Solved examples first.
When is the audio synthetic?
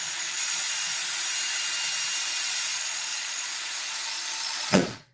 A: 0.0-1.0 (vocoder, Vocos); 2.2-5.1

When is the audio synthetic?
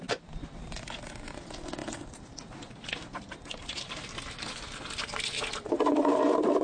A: none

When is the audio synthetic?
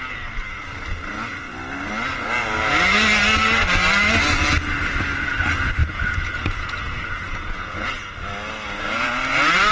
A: 5.8-7.9 (vocoder, Vocos)